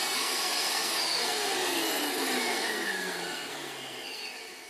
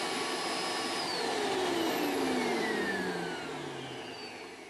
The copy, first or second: first